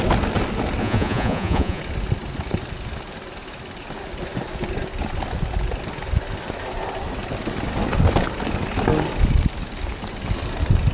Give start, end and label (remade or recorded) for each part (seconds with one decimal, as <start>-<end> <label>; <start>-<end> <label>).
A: 0.0-0.8 recorded; 0.8-1.8 remade; 1.8-10.9 recorded